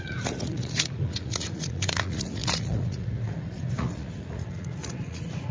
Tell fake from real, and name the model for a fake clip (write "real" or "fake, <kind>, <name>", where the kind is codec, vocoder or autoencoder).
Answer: fake, vocoder, Vocos